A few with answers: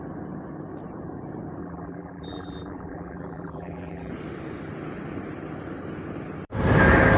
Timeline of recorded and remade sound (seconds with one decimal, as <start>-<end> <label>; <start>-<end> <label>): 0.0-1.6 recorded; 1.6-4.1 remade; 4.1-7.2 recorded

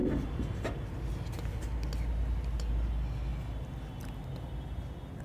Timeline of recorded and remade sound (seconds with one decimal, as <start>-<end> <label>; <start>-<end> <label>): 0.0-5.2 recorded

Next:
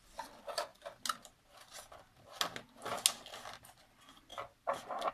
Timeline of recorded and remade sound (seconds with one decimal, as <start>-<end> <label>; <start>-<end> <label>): 0.0-0.7 remade; 0.7-3.8 recorded; 3.8-4.3 remade; 4.3-5.1 recorded